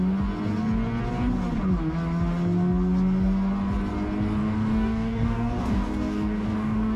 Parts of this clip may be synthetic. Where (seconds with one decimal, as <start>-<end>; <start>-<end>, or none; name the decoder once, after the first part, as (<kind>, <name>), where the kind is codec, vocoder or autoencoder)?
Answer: 4.4-7.0 (codec, DAC)